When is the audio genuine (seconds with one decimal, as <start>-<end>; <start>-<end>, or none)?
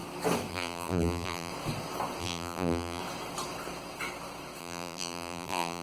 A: 0.0-0.5; 1.5-2.2; 3.0-4.6